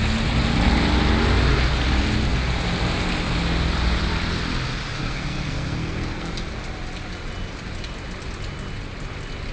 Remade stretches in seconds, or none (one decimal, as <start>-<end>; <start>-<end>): 5.0-6.3